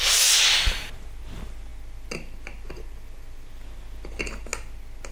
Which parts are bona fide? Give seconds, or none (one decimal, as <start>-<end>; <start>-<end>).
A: 0.0-5.1